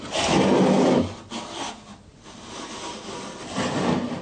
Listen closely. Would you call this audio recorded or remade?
recorded